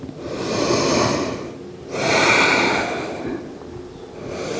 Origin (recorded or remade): recorded